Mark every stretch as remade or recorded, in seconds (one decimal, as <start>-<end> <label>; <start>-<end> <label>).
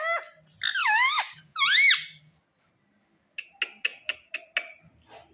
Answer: 0.0-0.8 recorded; 0.8-1.4 remade; 1.4-5.3 recorded